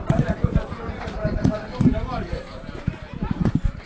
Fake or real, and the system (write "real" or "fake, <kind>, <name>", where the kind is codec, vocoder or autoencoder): fake, vocoder, BigVGAN v2